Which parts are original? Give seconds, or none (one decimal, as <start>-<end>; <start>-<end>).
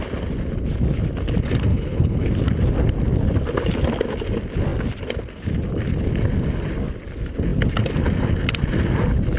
0.0-1.7; 2.3-9.4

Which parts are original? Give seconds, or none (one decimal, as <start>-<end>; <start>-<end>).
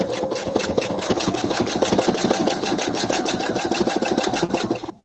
0.0-0.4; 1.7-2.4; 3.3-5.0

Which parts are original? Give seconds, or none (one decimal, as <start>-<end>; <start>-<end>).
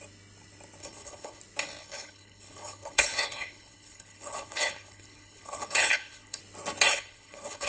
0.0-0.8; 1.4-1.8; 6.4-6.9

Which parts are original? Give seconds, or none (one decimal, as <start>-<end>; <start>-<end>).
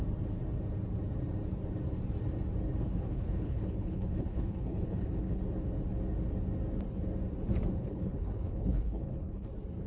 0.0-2.8; 5.4-7.8; 9.5-9.9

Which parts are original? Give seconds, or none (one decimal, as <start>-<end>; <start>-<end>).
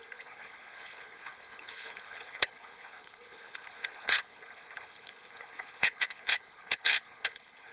none